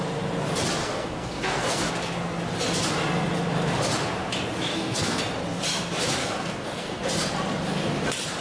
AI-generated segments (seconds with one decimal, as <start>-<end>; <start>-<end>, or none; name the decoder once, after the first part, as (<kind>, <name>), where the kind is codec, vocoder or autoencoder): 0.8-1.9 (codec, SNAC); 4.7-5.2; 6.2-7.0